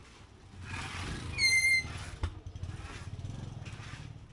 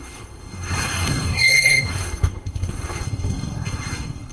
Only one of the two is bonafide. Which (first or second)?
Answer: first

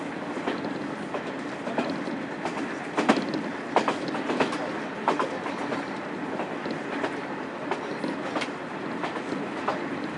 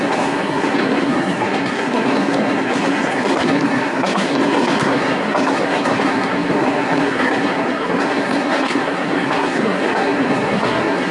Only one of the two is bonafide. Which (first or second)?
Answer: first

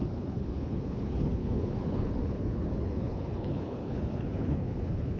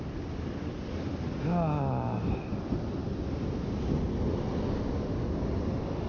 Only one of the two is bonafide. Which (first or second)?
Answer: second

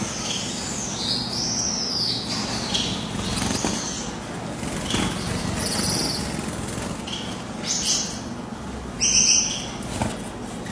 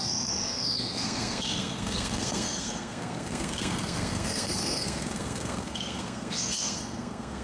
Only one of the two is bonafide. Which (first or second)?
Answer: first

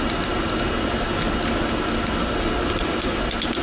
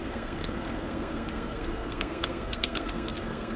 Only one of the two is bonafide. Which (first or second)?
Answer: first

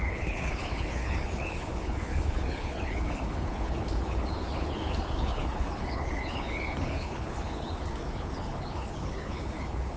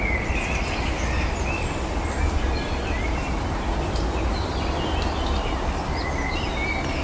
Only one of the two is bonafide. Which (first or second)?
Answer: second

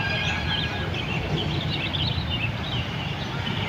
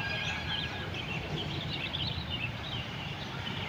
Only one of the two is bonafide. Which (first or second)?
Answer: first